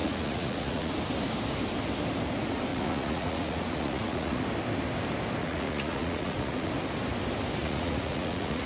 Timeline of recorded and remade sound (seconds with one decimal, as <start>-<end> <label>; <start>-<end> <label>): 0.0-0.9 remade; 0.9-2.7 recorded; 2.7-4.4 remade; 4.4-5.4 recorded; 5.4-6.7 remade; 6.7-7.6 recorded; 7.6-8.7 remade